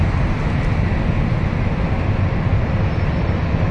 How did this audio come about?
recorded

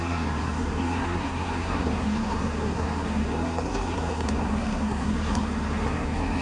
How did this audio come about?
remade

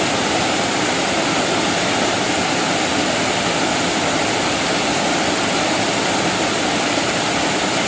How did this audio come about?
recorded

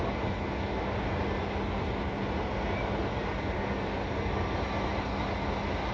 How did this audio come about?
recorded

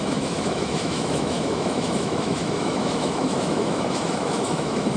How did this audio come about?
remade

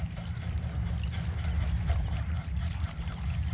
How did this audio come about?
recorded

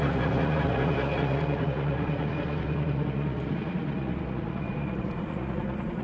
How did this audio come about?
remade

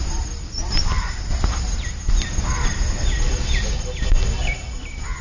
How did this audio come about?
recorded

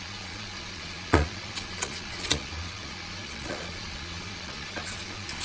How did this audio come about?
remade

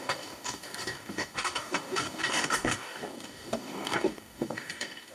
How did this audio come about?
remade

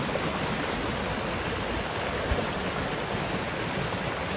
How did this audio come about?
recorded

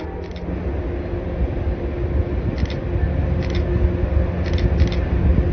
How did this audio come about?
recorded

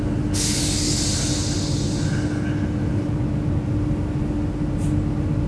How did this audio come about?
recorded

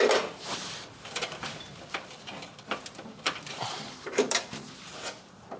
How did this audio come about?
remade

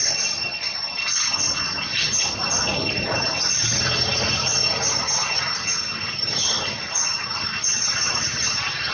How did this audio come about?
recorded